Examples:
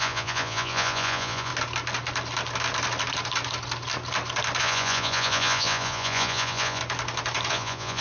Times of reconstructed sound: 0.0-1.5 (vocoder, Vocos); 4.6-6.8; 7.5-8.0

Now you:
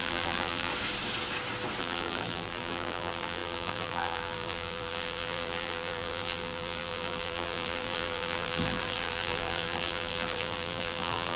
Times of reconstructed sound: 0.0-0.7 (vocoder, BigVGAN v2); 1.8-11.4

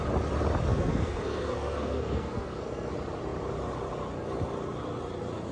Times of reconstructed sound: 0.7-2.9 (codec, SNAC)

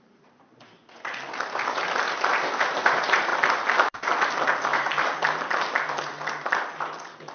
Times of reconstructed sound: 0.0-0.8 (vocoder, BigVGAN v2); 1.7-3.3